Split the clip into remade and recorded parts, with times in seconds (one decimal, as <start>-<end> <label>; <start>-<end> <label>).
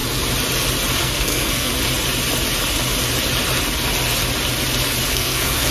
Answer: 0.0-1.0 recorded; 1.0-1.7 remade; 1.7-5.1 recorded; 5.1-5.7 remade